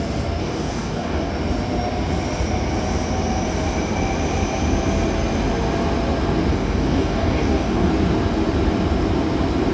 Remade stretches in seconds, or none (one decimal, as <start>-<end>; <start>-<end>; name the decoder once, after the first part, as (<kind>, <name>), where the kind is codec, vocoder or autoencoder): 0.4-1.3 (codec, DAC); 6.5-7.9